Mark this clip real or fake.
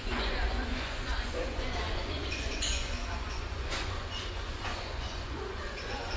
fake